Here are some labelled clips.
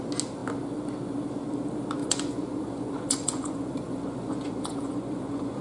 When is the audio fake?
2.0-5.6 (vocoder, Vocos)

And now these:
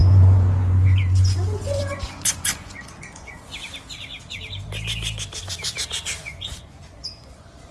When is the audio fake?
0.0-3.5 (vocoder, Vocos); 6.2-7.7